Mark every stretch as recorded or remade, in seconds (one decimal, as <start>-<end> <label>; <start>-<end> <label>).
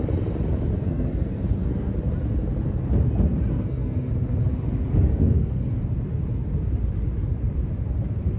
0.0-0.7 recorded; 0.7-1.9 remade; 1.9-3.5 recorded; 3.5-4.1 remade; 4.1-5.1 recorded; 5.1-5.8 remade; 5.8-8.4 recorded